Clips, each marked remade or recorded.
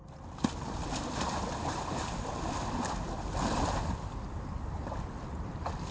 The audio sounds remade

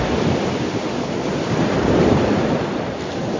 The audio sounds remade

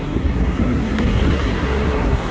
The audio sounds remade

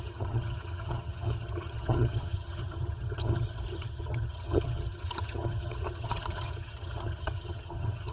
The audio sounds remade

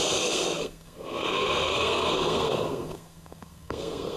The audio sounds remade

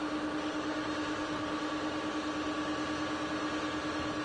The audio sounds recorded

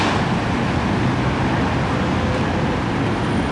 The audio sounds recorded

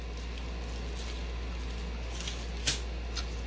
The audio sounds recorded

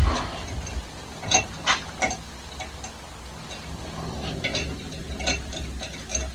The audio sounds recorded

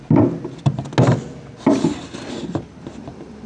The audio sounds recorded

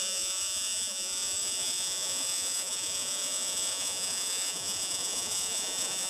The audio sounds remade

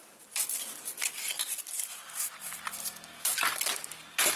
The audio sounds recorded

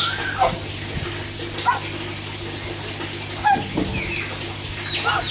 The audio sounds recorded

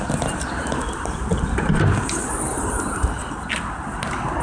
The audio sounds recorded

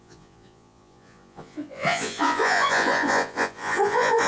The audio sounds remade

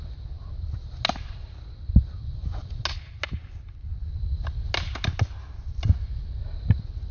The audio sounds recorded